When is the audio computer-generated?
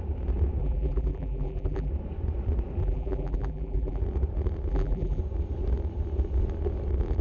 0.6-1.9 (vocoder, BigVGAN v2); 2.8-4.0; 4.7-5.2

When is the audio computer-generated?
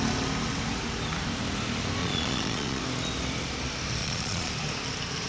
2.0-2.8 (vocoder, Vocos); 4.0-4.5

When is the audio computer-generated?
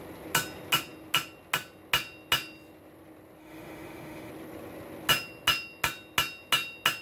3.4-4.3 (autoencoder, DAC-VAE)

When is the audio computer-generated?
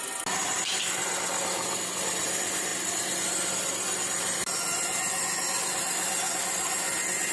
none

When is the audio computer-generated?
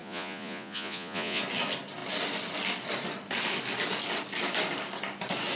0.0-1.4 (vocoder, Vocos)